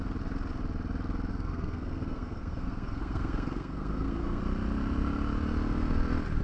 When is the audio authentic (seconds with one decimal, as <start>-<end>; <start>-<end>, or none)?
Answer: 0.0-1.3; 4.4-6.4